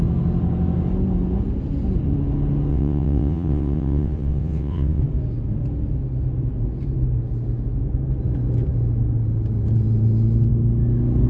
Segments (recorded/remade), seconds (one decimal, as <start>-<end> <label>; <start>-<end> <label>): 0.0-2.7 recorded; 2.7-5.0 remade; 5.0-11.3 recorded